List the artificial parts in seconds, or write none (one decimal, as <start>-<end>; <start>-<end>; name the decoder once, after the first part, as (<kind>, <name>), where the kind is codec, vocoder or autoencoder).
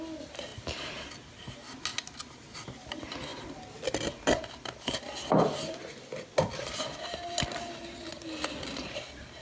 none